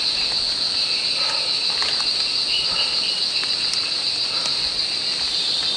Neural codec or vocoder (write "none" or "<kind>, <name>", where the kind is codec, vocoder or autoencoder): none